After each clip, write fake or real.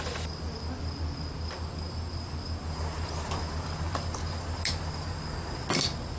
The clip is real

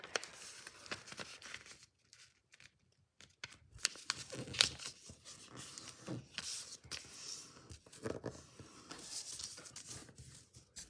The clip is real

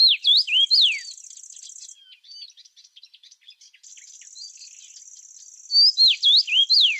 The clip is real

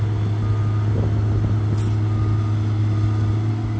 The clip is real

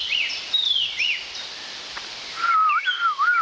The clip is fake